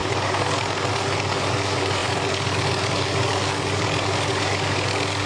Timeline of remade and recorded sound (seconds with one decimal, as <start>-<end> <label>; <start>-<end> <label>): 0.0-5.3 remade